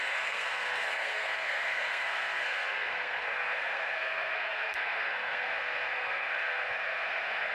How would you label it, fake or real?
fake